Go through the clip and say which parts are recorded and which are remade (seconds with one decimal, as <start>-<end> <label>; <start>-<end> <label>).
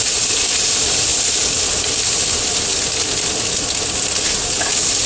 0.0-5.1 recorded